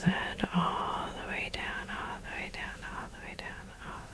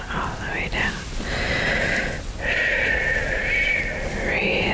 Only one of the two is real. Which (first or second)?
second